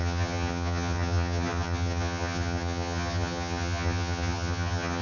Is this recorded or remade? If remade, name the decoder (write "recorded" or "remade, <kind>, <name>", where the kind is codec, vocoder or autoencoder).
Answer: remade, vocoder, HiFi-GAN